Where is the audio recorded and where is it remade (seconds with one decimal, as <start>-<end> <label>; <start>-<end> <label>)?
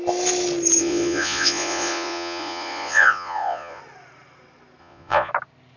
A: 0.0-0.8 recorded; 0.8-3.8 remade; 3.8-4.8 recorded; 4.8-5.3 remade; 5.3-5.8 recorded